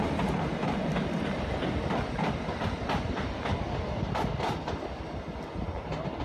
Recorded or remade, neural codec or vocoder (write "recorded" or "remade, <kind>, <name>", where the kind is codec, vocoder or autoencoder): recorded